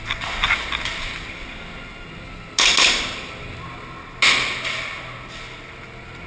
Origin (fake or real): real